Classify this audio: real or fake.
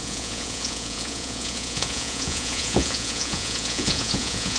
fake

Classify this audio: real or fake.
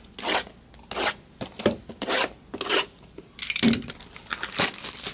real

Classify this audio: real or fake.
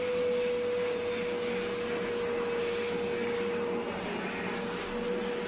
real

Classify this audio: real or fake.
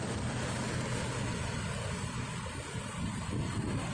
real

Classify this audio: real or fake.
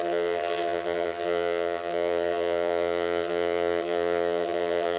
fake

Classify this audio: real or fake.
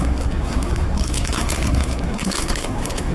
fake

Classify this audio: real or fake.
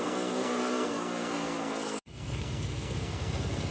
fake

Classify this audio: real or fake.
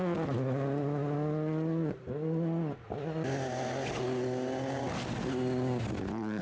real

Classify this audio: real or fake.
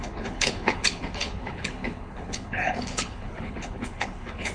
fake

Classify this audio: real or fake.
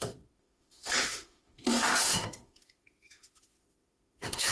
fake